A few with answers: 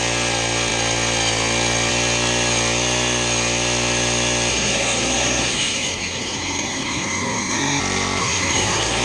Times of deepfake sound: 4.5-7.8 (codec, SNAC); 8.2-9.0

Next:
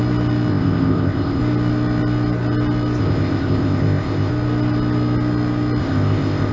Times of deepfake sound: 0.5-1.4 (codec, ZipCodec); 3.0-4.3; 5.8-6.5

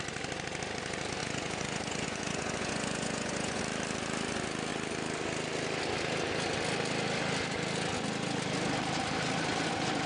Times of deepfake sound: 1.2-3.6 (vocoder, Vocos)

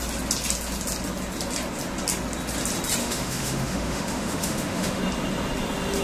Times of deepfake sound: 3.0-5.0 (autoencoder, DAC-VAE)